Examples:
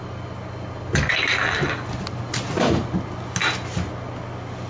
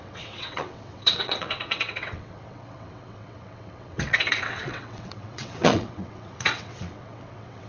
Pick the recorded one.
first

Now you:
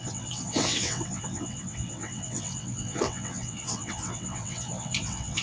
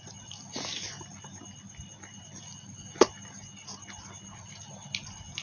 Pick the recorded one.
second